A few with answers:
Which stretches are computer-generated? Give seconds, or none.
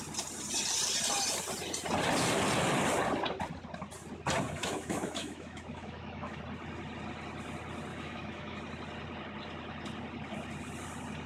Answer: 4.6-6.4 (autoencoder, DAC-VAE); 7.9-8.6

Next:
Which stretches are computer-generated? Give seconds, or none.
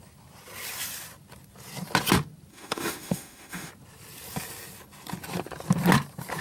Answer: 2.5-3.7 (autoencoder, DAC-VAE)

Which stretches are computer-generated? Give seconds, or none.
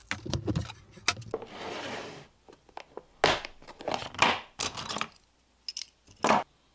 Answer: none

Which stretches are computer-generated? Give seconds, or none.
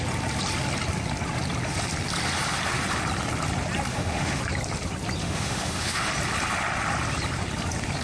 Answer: 3.9-4.4 (autoencoder, DAC-VAE); 5.2-6.1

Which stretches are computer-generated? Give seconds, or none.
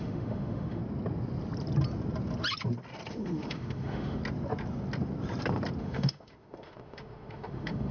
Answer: 0.0-0.8 (autoencoder, DAC-VAE); 3.1-4.2; 5.8-7.9